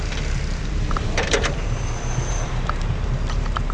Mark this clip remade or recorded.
remade